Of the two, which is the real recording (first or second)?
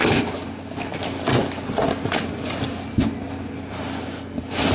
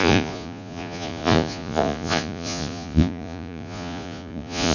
first